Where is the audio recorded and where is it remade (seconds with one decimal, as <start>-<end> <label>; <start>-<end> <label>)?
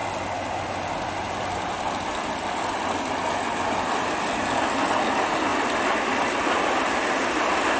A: 0.0-7.8 recorded